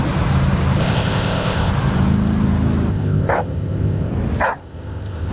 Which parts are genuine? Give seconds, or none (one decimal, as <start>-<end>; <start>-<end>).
0.0-0.8; 1.7-2.9; 4.1-4.6